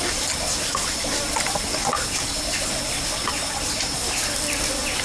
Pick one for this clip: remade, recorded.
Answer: recorded